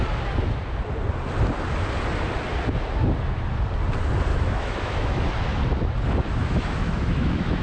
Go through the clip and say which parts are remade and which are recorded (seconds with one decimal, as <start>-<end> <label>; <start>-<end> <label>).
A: 0.0-4.3 recorded; 4.3-5.3 remade; 5.3-6.4 recorded; 6.4-7.6 remade